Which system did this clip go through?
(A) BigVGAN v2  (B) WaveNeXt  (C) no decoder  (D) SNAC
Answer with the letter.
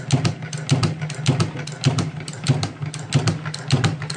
C